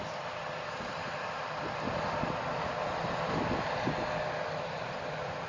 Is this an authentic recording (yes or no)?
yes